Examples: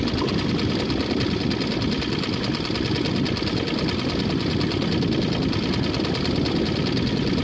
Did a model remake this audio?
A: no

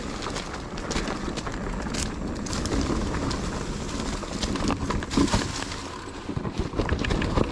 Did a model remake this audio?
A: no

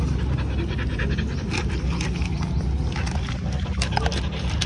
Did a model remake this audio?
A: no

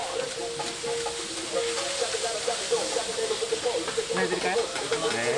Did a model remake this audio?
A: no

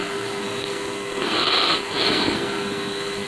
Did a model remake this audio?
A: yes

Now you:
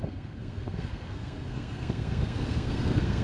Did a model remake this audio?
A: yes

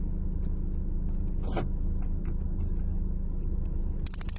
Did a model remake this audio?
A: no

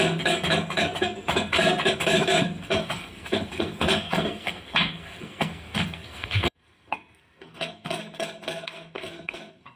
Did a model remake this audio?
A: yes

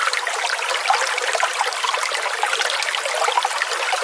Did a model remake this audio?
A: no